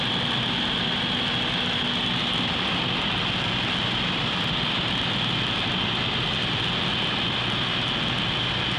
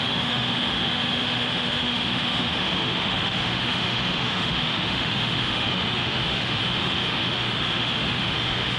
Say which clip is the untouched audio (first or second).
first